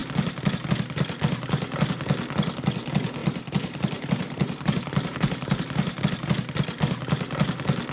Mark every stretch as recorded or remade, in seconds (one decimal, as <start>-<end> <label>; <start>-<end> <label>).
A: 0.0-3.2 recorded; 3.2-6.0 remade; 6.0-7.9 recorded